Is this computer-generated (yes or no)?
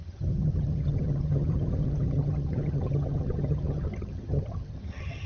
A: yes